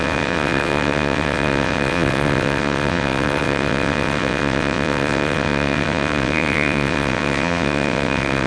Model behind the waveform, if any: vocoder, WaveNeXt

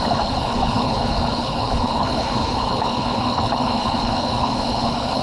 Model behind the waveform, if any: codec, HILCodec